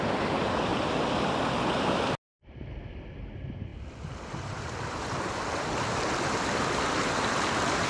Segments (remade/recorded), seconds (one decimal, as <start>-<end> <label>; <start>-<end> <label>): 0.0-0.7 recorded; 0.7-1.5 remade; 1.5-3.7 recorded; 3.7-5.3 remade; 5.3-7.9 recorded